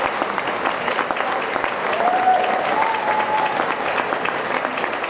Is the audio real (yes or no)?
yes